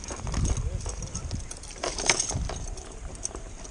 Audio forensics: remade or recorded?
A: recorded